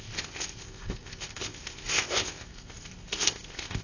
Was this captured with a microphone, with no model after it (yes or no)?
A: no